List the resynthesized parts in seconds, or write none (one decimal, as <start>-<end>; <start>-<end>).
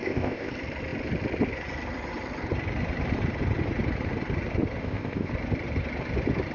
0.0-0.5; 4.8-5.3